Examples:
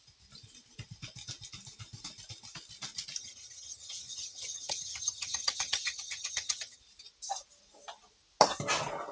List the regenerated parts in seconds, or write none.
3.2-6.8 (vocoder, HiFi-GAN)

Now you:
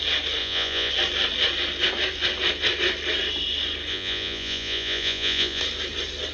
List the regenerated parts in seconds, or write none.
0.4-0.9 (vocoder, Vocos); 3.9-5.6

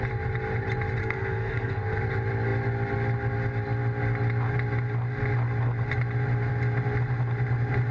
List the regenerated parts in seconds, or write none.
1.0-2.0 (codec, SNAC)

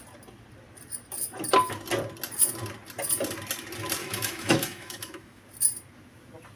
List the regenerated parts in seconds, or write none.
4.0-5.4 (autoencoder, DAC-VAE)

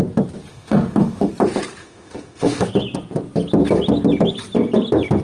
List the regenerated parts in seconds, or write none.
0.5-1.3 (autoencoder, DAC-VAE); 1.8-2.7

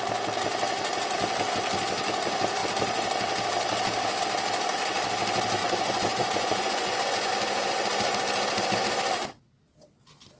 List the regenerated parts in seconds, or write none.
5.6-7.3 (vocoder, Vocos)

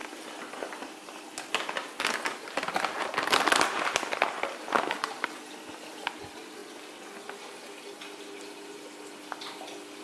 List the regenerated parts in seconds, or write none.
none

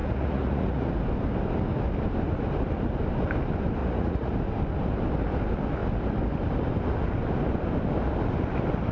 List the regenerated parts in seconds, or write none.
0.0-0.9 (vocoder, Vocos); 3.8-4.3